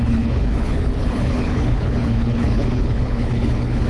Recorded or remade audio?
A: remade